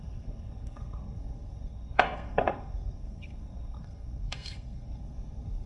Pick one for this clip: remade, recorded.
remade